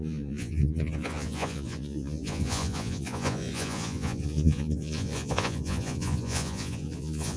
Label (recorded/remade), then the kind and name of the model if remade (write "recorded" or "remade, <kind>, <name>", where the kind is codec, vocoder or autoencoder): remade, vocoder, Vocos